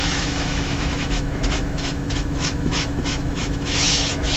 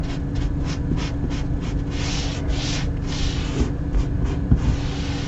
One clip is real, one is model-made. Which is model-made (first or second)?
first